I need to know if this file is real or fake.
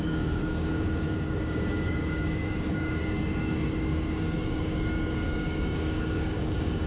fake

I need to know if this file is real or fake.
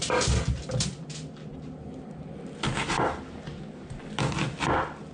real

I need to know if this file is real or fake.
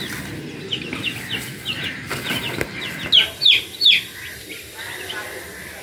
real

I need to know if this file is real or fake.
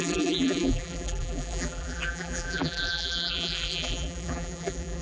fake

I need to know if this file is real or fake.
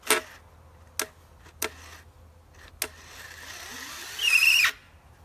real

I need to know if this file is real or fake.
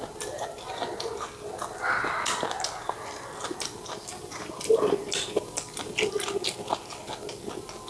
real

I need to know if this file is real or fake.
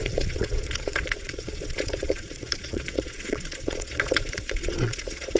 fake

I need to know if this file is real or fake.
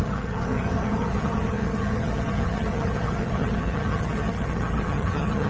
fake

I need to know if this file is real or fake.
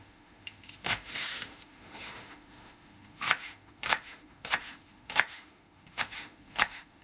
fake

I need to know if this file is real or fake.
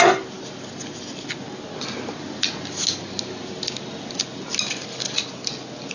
real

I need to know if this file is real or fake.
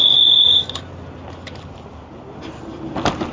real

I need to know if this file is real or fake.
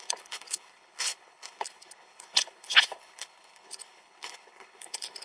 fake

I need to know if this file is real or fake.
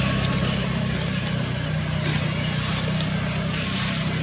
real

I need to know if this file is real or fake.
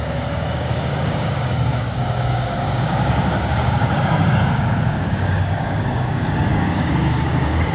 fake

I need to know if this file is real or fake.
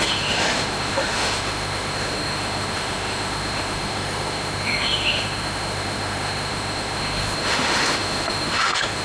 fake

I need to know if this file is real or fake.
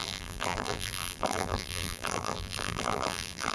fake